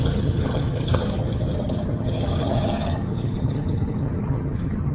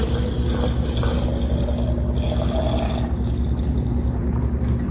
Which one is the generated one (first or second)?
first